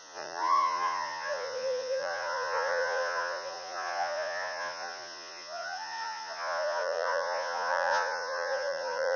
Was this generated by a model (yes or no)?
yes